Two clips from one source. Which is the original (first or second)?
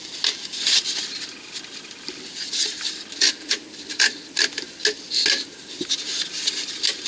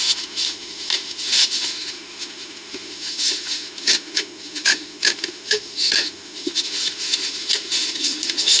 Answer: first